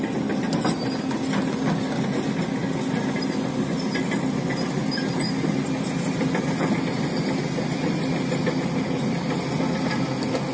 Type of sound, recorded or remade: recorded